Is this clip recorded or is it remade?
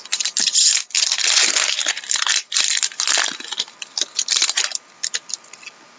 recorded